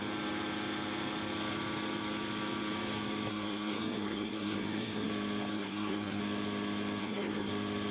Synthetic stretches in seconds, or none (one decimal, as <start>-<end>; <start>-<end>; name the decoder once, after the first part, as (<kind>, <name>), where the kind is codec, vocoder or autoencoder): 3.3-5.1 (codec, SNAC); 5.5-6.2; 7.0-7.5